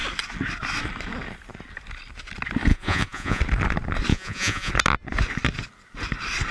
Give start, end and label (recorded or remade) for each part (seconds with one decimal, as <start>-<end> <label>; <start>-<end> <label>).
0.0-2.7 recorded; 2.7-3.4 remade; 3.4-4.1 recorded; 4.1-4.7 remade; 4.7-6.5 recorded